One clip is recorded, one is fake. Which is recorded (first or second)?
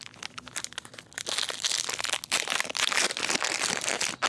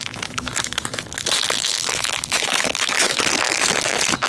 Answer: first